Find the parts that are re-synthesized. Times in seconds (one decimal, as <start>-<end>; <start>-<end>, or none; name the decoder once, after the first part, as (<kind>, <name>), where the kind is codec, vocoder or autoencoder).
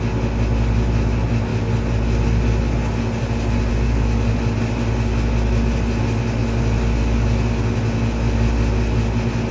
none